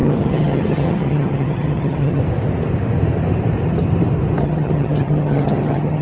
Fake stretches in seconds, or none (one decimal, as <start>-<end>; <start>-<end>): 0.0-2.2; 4.4-6.0